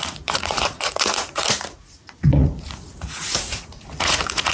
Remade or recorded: remade